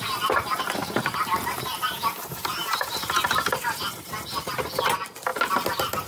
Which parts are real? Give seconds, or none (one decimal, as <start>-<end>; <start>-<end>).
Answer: 0.0-6.1